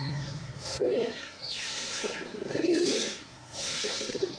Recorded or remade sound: remade